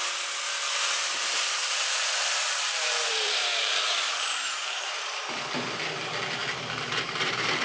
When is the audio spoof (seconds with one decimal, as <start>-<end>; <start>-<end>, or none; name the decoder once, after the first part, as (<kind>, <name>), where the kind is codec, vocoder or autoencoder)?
1.6-5.4 (vocoder, BigVGAN v2); 6.4-7.6